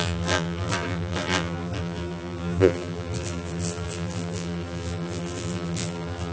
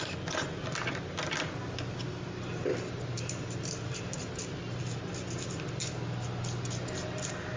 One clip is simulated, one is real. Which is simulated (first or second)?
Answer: first